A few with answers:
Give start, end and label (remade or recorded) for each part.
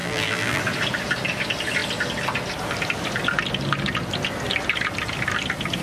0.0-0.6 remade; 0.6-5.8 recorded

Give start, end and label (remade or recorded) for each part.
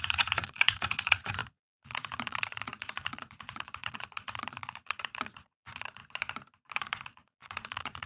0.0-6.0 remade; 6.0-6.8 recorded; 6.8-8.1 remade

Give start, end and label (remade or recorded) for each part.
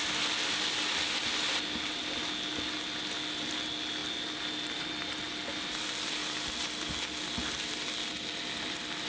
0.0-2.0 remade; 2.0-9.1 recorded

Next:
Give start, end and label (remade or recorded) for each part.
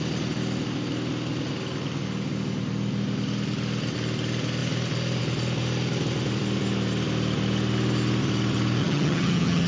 0.0-8.8 recorded; 8.8-9.7 remade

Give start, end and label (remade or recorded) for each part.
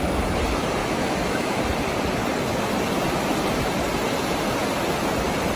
0.0-0.8 recorded; 0.8-1.6 remade; 1.6-5.6 recorded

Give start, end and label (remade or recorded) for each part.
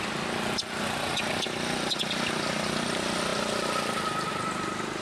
0.0-5.0 recorded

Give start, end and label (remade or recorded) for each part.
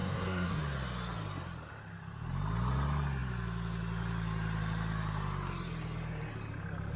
0.0-0.6 remade; 0.6-7.0 recorded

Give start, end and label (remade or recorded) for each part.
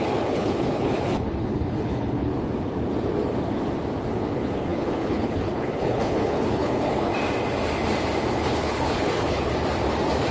0.0-2.3 remade; 2.3-4.3 recorded; 4.3-7.1 remade; 7.1-8.3 recorded; 8.3-9.5 remade; 9.5-10.3 recorded